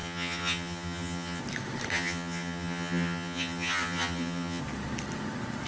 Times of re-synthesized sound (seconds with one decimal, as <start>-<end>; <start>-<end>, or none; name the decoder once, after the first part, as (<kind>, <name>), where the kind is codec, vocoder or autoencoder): 0.0-1.4 (vocoder, HiFi-GAN); 1.9-4.6